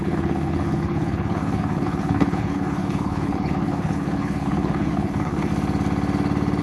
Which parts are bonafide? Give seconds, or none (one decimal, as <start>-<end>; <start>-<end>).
5.5-6.6